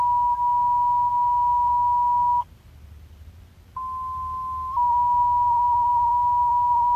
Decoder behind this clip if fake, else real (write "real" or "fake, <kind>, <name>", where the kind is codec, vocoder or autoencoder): real